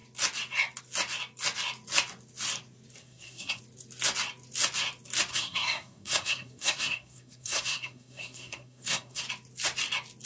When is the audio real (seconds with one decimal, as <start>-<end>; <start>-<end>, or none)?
0.0-3.0; 3.6-5.3; 9.2-10.3